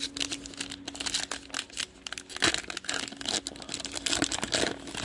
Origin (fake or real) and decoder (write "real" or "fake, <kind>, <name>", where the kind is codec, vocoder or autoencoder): real